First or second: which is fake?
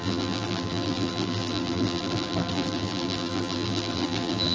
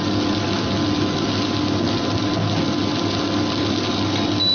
first